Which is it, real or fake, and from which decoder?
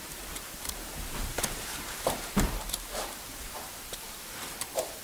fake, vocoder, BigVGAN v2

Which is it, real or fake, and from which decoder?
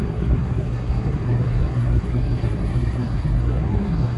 fake, codec, SNAC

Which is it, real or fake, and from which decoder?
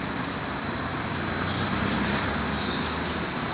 real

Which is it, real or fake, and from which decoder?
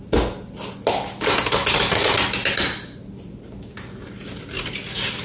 real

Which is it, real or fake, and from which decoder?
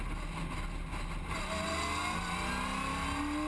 real